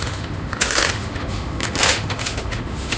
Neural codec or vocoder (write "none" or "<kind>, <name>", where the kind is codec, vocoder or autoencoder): autoencoder, DAC-VAE